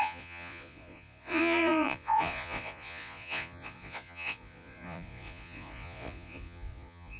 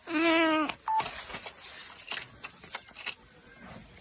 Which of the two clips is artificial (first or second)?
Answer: first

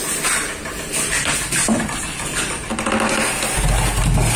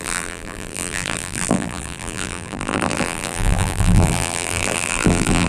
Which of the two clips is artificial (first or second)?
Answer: second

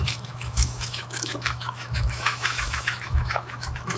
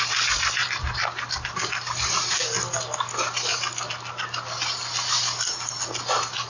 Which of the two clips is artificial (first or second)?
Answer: first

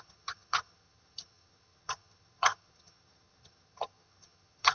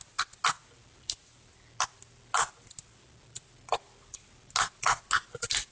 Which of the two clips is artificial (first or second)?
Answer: first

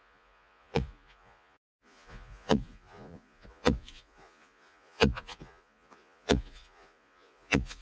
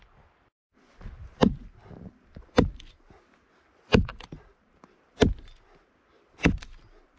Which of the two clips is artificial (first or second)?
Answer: first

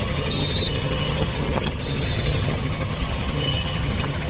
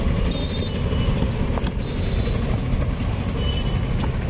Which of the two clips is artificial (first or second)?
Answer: first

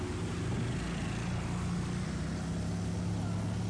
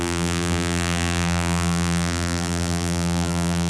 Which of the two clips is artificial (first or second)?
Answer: second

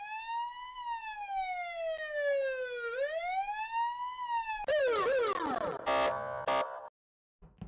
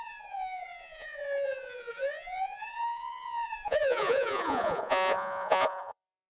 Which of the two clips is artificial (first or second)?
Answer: second